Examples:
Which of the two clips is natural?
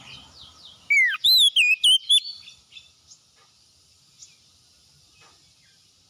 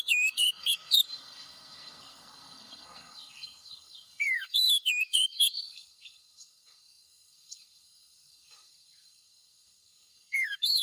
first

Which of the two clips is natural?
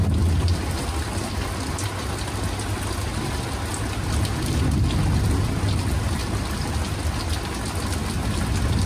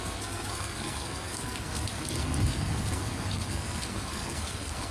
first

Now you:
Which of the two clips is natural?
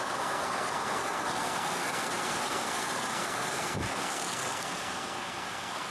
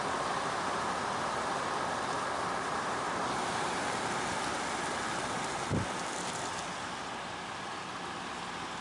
second